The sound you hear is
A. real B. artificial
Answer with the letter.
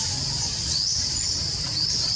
A